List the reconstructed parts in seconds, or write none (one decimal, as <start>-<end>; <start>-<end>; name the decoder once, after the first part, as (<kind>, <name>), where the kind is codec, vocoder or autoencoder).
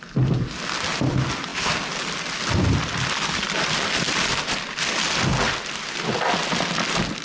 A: none